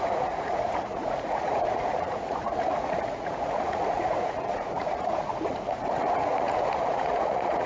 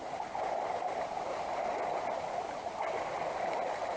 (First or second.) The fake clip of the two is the first